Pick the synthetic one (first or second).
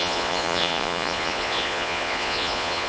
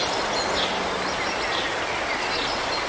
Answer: first